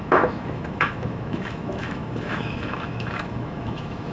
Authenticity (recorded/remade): remade